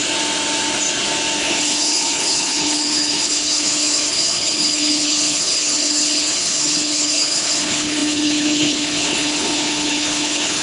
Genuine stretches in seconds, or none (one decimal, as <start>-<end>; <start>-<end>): 0.0-1.4